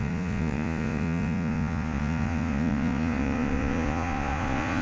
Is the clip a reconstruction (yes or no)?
yes